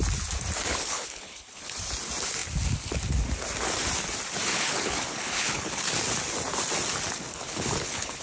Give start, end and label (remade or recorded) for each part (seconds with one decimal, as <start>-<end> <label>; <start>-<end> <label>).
0.0-0.7 recorded; 0.7-1.8 remade; 1.8-4.5 recorded; 4.5-5.9 remade; 5.9-7.3 recorded; 7.3-8.2 remade